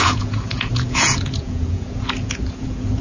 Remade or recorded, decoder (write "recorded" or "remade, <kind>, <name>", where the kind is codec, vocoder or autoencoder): remade, vocoder, Vocos